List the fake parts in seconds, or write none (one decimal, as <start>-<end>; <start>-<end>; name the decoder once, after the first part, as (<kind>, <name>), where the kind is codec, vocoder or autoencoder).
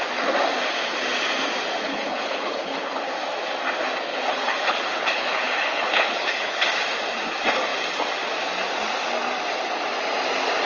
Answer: 1.8-3.1 (codec, HILCodec); 4.1-6.7